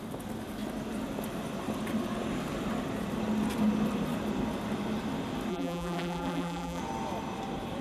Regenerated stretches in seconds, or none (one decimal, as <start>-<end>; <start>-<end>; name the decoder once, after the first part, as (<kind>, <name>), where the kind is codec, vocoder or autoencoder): 5.5-6.8 (vocoder, BigVGAN v2)